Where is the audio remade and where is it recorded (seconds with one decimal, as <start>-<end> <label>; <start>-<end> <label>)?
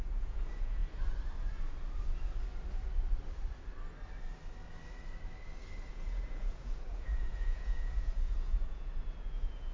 0.0-0.8 remade; 0.8-5.9 recorded; 5.9-9.7 remade